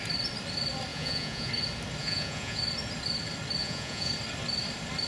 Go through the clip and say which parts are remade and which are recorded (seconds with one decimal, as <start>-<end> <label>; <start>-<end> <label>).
0.0-0.9 recorded; 0.9-1.5 remade; 1.5-2.0 recorded; 2.0-2.6 remade; 2.6-3.6 recorded; 3.6-4.1 remade; 4.1-5.1 recorded